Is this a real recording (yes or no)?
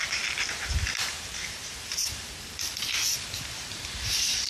no